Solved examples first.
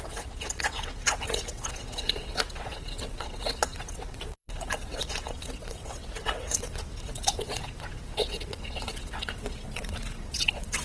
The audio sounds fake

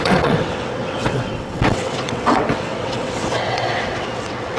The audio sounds fake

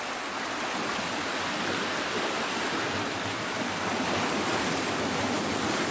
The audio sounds real